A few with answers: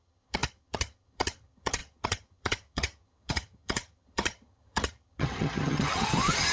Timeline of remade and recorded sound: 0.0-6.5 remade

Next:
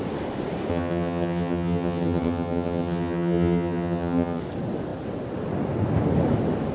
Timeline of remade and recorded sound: 0.0-0.7 recorded; 0.7-4.4 remade; 4.4-6.7 recorded

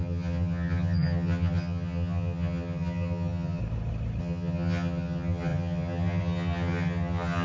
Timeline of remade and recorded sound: 0.0-3.6 remade; 3.6-4.2 recorded; 4.2-7.4 remade

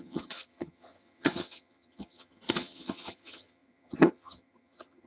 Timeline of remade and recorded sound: 0.0-5.1 remade

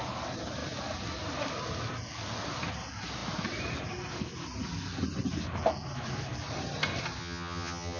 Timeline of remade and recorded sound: 0.0-7.2 recorded; 7.2-8.0 remade

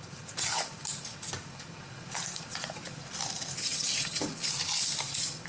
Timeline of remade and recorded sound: 0.0-3.6 recorded; 3.6-4.2 remade; 4.2-5.5 recorded

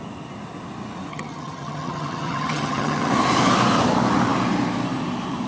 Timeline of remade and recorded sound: 0.0-1.1 recorded; 1.1-3.1 remade; 3.1-5.5 recorded

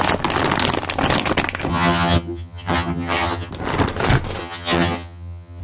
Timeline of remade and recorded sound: 0.0-1.7 recorded; 1.7-3.5 remade; 3.5-4.4 recorded; 4.4-5.6 remade